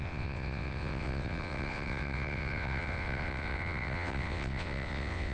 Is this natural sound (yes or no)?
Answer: no